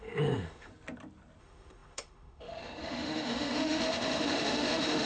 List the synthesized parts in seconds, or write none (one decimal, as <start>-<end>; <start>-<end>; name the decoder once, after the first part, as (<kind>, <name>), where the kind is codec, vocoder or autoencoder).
0.0-0.7 (autoencoder, DAC-VAE); 1.4-5.1